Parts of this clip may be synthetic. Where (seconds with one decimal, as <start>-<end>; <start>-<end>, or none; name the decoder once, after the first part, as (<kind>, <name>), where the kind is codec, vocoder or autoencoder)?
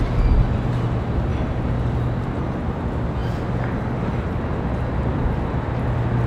1.3-2.2 (vocoder, BigVGAN v2)